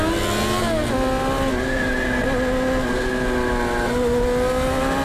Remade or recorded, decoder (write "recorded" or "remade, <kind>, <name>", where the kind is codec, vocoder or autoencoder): recorded